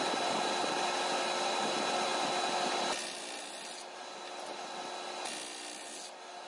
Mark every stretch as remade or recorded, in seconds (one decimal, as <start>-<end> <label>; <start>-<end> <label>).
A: 0.0-6.5 recorded